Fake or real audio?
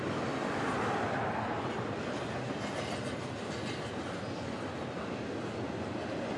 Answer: real